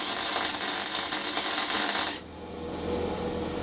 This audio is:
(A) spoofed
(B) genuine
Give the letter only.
B